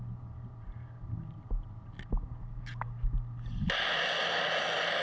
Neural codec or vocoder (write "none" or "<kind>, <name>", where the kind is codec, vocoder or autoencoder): none